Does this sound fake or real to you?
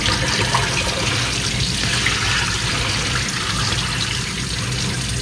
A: real